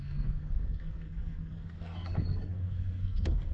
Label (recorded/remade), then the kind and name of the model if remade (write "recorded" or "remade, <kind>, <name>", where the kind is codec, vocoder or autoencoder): remade, codec, SNAC